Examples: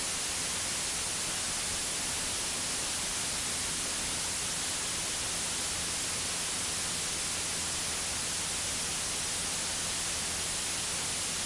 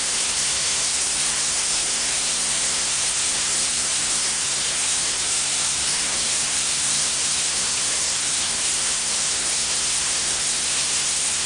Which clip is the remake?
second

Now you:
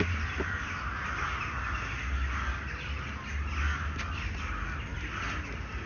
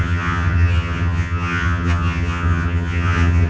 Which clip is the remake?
second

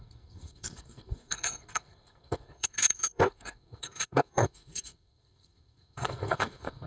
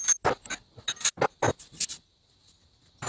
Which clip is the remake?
first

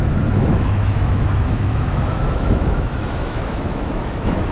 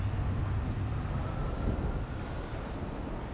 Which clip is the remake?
first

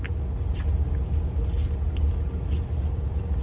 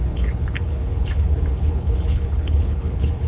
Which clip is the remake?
second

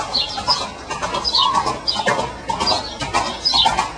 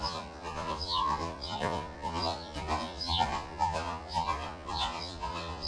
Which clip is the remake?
second